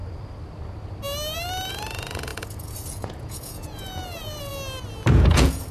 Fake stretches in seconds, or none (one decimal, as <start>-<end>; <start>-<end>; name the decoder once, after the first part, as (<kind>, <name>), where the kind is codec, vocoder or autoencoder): 1.7-4.5 (vocoder, Vocos); 5.1-5.7

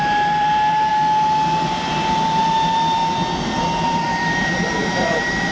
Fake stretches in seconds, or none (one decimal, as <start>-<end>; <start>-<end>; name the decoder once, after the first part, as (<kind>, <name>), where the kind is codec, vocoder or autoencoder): 0.0-0.9 (vocoder, BigVGAN v2); 2.4-3.0; 3.6-5.5

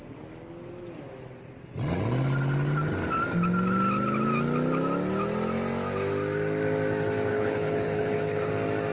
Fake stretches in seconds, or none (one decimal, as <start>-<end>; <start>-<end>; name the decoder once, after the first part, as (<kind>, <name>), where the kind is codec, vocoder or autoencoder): 7.3-8.5 (codec, HILCodec)

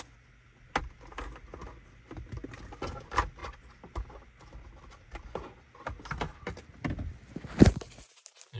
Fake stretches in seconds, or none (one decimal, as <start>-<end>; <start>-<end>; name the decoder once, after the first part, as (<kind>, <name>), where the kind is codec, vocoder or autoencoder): none